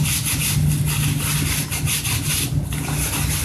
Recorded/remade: recorded